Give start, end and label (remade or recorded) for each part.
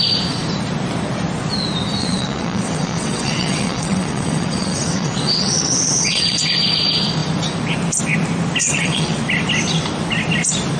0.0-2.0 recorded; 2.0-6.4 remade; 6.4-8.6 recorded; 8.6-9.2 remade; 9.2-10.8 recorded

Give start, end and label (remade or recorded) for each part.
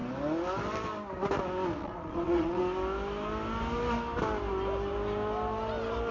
0.0-1.8 recorded; 1.8-2.6 remade; 2.6-6.1 recorded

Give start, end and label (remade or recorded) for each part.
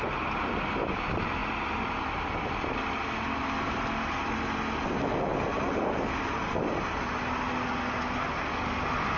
0.0-9.2 recorded